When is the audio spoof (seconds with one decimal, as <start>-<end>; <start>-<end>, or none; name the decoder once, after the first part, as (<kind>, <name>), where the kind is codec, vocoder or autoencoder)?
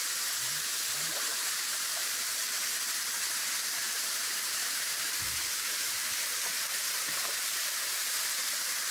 0.0-8.9 (vocoder, BigVGAN v2)